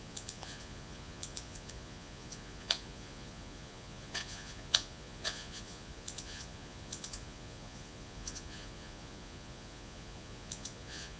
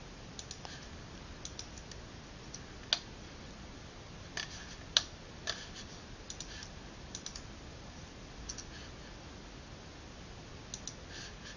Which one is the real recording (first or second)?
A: second